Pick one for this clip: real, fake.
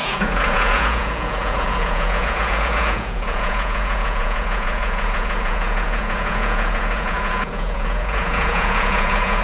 fake